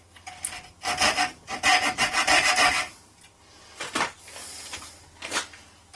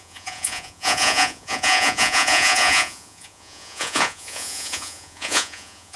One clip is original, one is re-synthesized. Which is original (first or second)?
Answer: first